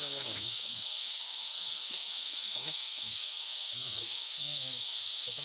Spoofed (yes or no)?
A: yes